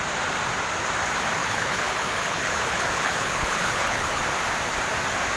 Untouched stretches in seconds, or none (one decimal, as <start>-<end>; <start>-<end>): 0.0-1.4; 4.2-5.4